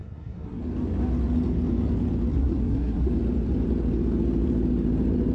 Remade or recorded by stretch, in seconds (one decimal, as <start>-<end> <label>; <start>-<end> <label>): 0.0-0.6 remade; 0.6-2.3 recorded; 2.3-3.1 remade; 3.1-5.3 recorded